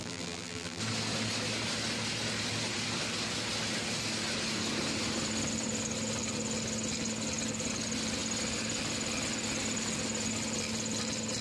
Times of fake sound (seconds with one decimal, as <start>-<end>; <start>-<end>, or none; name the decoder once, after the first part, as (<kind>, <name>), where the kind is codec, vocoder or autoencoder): 0.0-0.8 (vocoder, BigVGAN v2)